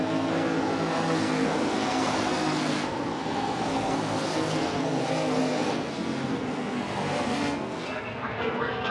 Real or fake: fake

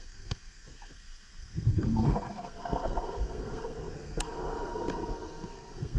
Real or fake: fake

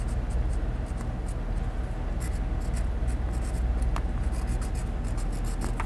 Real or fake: real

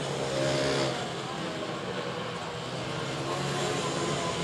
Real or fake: real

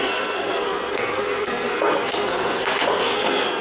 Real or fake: fake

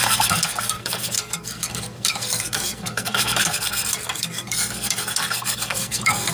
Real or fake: fake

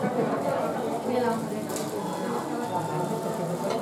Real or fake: real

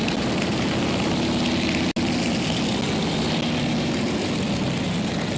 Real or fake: real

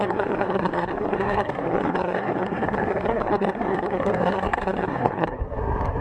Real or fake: fake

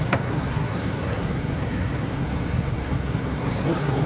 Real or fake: fake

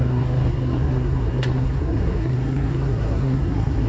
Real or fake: fake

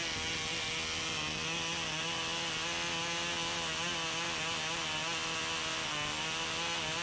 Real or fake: real